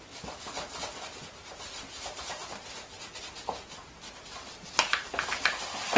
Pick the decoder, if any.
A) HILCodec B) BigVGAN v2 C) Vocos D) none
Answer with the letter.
D